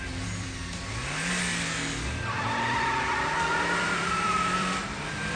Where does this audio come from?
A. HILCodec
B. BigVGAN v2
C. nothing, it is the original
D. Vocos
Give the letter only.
B